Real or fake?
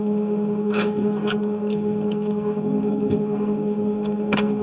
fake